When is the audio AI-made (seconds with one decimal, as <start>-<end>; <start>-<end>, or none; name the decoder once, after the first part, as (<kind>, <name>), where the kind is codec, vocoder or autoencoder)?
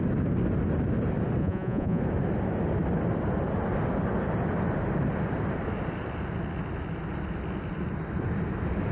1.4-2.0 (vocoder, Vocos)